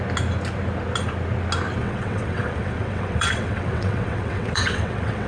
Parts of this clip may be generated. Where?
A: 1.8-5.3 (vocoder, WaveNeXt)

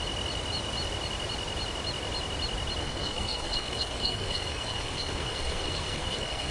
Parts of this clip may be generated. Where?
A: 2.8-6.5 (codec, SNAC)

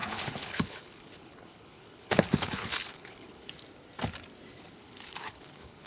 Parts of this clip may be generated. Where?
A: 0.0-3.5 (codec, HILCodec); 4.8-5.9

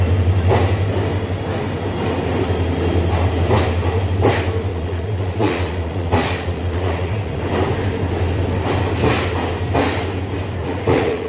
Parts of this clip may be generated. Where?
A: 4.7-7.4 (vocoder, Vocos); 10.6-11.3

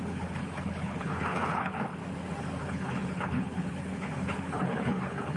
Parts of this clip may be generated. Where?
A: 0.0-2.0 (codec, HILCodec); 2.6-5.4

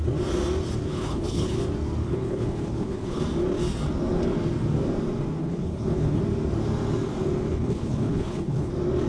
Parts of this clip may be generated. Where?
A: 0.9-1.6 (codec, HILCodec); 2.0-3.2; 5.4-6.2; 7.5-8.7